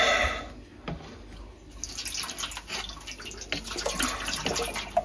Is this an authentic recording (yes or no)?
yes